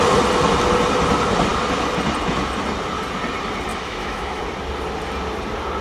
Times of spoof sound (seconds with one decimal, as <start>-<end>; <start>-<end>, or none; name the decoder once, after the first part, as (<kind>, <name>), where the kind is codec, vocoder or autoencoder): 3.7-4.4 (autoencoder, DAC-VAE)